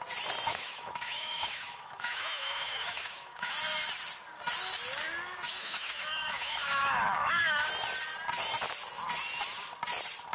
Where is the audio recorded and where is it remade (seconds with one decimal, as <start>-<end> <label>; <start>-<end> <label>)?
0.0-0.5 recorded; 0.5-3.5 remade; 3.5-5.6 recorded; 5.6-7.7 remade; 7.7-10.3 recorded